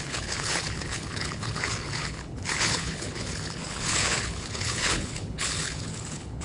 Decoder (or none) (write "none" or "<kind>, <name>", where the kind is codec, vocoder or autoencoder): codec, HILCodec